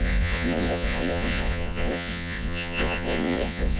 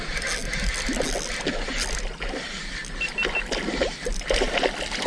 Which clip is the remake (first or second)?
first